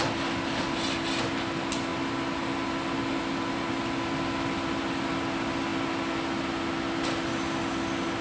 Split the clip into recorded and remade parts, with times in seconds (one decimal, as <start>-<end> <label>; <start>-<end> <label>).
0.0-8.2 recorded